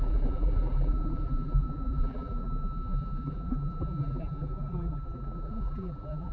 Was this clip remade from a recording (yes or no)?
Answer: yes